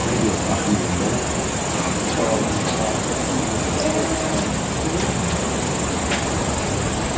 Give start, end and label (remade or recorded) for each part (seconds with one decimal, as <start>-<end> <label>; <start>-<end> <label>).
0.0-7.2 recorded

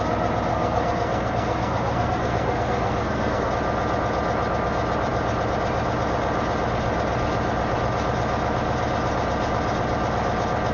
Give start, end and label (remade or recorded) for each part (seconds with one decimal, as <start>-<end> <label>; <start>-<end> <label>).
0.0-0.5 recorded; 0.5-3.5 remade; 3.5-10.7 recorded

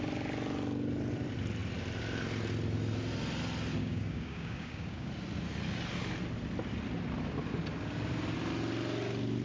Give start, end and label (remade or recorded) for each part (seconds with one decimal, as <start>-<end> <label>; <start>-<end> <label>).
0.0-3.8 recorded; 3.8-5.1 remade; 5.1-9.4 recorded

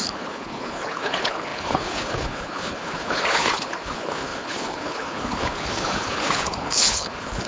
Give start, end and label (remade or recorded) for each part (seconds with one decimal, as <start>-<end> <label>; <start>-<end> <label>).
0.0-7.5 remade

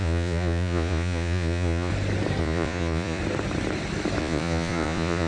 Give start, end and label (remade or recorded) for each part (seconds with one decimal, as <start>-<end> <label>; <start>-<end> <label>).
0.0-1.9 remade; 1.9-2.4 recorded; 2.4-3.2 remade; 3.2-4.2 recorded; 4.2-5.3 remade

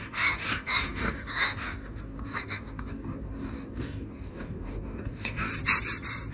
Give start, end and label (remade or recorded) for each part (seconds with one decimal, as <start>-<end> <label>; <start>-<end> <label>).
0.0-5.5 remade; 5.5-6.3 recorded